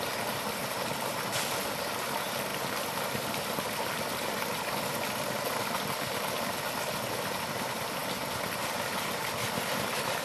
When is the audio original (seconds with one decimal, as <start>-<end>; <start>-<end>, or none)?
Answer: 0.0-10.2